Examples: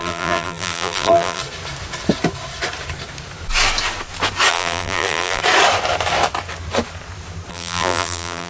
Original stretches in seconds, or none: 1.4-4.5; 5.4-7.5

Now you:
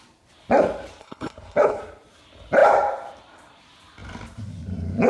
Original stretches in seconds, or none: 0.0-1.0; 1.8-5.1

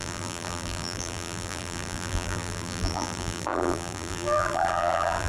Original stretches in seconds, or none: none

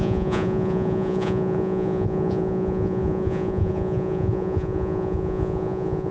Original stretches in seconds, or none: none

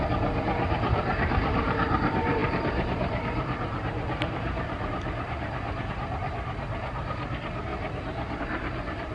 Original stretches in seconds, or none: 7.7-8.4

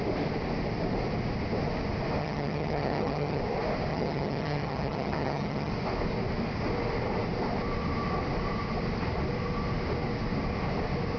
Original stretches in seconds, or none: 0.0-2.2; 3.4-3.9; 5.7-11.2